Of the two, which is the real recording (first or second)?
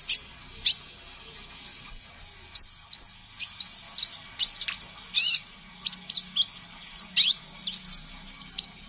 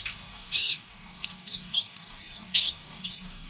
first